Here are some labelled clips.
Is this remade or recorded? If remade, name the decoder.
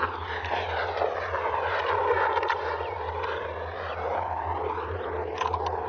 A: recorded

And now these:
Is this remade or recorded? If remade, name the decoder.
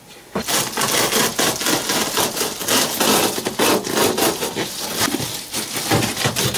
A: recorded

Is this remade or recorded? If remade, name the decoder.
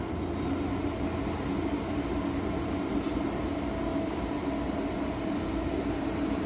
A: recorded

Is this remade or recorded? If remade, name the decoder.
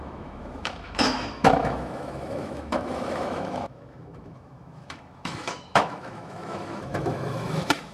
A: remade, autoencoder, DAC-VAE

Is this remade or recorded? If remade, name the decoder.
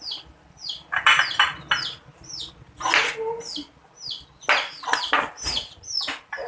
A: recorded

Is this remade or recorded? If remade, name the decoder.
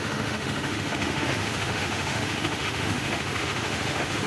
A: remade, autoencoder, DAC-VAE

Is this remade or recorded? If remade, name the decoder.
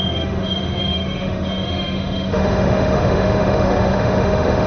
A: remade, autoencoder, DAC-VAE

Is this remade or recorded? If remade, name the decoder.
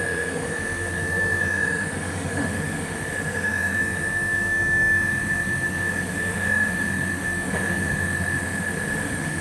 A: remade, autoencoder, DAC-VAE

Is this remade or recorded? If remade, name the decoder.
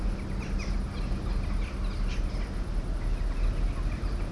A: recorded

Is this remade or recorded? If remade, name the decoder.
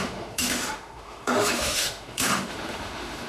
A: remade, autoencoder, DAC-VAE